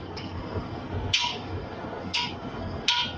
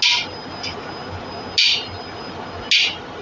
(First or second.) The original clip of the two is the second